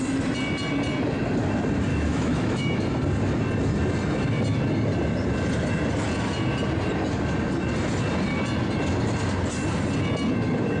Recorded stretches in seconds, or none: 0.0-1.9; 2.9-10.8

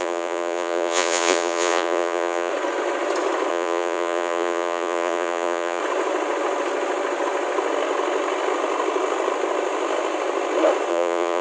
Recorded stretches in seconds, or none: 2.5-3.5; 5.8-10.9

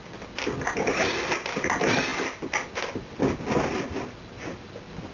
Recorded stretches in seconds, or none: 0.0-5.1

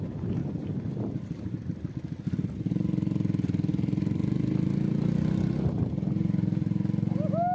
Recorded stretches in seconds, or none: 0.0-0.4; 1.9-3.7; 5.7-7.5